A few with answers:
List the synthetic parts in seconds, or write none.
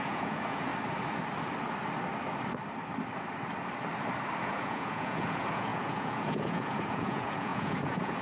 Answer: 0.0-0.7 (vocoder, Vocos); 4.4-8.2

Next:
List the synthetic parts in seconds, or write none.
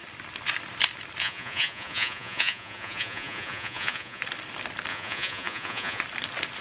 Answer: 1.2-4.2 (vocoder, Vocos); 4.9-6.0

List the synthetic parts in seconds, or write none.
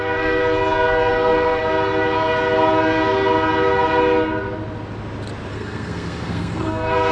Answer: 0.0-0.4 (codec, SNAC); 1.1-1.6; 5.5-7.1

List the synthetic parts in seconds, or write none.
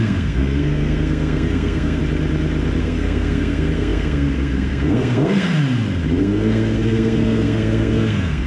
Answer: 0.0-2.0 (codec, SNAC); 2.8-5.5; 6.2-8.5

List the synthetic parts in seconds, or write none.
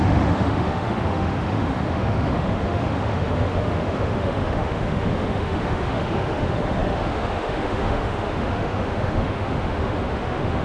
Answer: 0.0-10.6 (autoencoder, DAC-VAE)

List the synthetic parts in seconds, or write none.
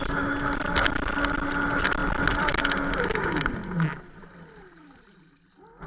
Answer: none